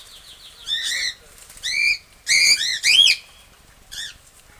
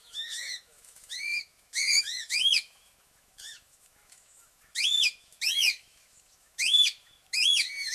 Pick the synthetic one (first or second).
second